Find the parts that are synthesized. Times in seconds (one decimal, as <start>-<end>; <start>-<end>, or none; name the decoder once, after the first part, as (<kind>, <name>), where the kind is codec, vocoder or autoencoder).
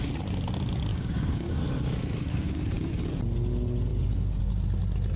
0.9-1.6 (codec, DAC); 2.3-3.1; 3.9-4.4